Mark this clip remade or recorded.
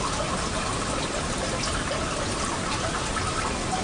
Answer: recorded